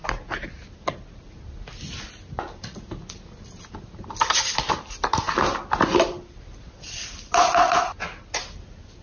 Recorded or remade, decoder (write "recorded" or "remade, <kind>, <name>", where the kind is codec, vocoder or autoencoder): recorded